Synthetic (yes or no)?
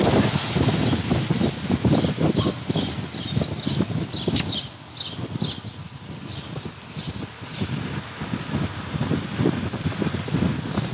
no